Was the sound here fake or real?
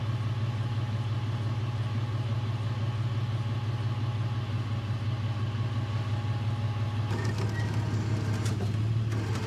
real